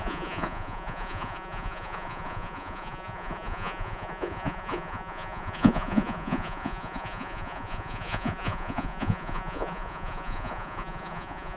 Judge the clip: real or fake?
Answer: fake